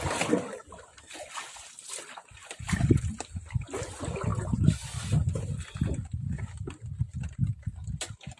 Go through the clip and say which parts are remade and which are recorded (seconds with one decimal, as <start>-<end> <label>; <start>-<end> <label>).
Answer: 0.0-8.4 recorded